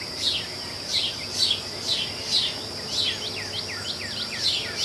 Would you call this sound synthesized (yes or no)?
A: no